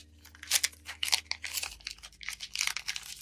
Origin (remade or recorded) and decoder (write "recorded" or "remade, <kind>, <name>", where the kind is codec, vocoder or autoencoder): recorded